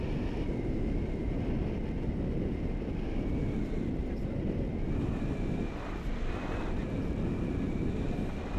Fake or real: real